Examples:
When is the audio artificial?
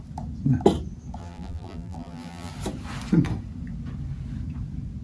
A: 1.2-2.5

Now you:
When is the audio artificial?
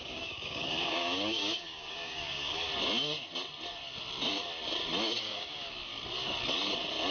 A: 0.0-2.7; 5.2-5.9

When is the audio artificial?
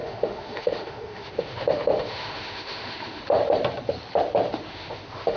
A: 0.0-3.2; 4.7-5.4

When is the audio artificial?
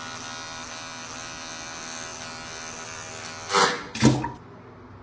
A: none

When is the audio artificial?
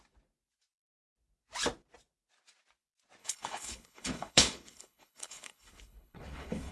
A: 3.2-6.7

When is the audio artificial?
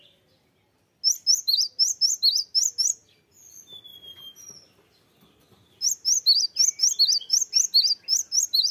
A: none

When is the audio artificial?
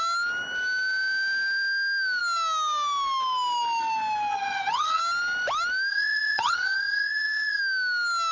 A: 4.3-5.0; 5.9-7.6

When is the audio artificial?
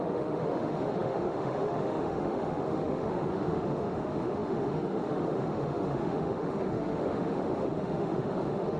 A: 0.0-8.8